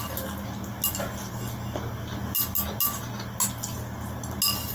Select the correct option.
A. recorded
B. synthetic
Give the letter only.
A